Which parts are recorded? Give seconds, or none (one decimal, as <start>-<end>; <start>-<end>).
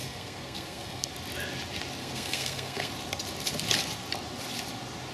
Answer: 1.1-2.0; 2.9-5.1